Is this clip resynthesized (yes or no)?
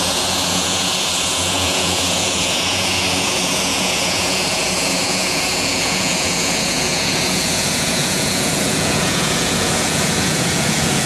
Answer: yes